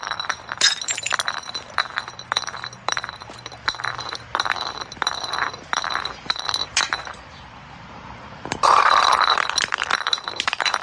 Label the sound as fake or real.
fake